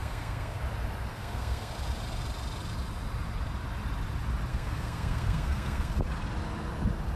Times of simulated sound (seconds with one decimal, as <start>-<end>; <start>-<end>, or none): 0.0-0.6; 1.1-1.7; 4.5-5.9